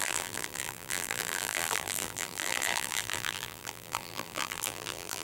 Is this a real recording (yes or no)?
no